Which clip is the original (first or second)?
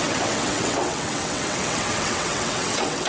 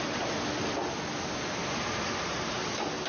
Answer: second